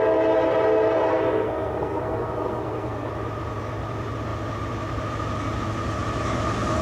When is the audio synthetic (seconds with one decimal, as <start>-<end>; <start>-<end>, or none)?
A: 1.1-3.1